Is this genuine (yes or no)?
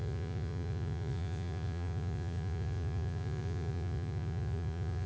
no